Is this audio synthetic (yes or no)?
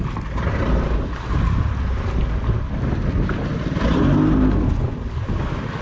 no